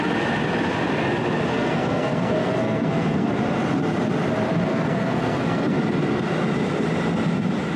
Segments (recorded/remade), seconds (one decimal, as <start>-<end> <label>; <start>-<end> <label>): 0.0-1.5 recorded; 1.5-3.3 remade; 3.3-4.7 recorded; 4.7-5.8 remade; 5.8-7.8 recorded